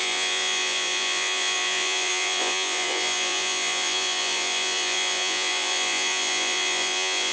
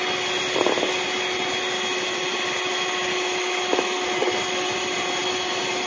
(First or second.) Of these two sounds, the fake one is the first